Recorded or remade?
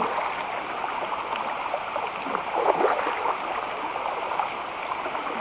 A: recorded